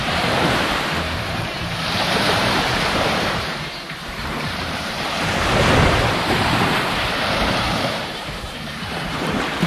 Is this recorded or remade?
remade